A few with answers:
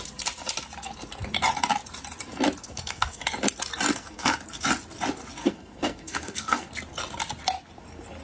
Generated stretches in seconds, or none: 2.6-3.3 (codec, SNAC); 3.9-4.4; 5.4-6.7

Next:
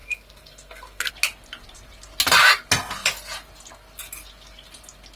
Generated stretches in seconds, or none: 0.0-1.1 (codec, SNAC)

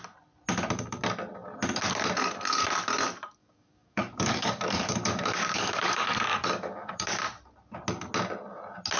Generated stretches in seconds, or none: 3.4-7.2 (codec, DAC)

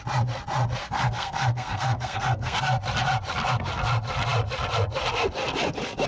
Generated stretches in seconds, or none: 0.8-2.6 (codec, SNAC)